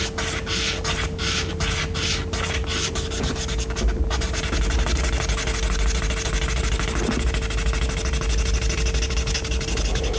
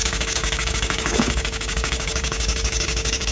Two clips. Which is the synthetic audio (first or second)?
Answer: second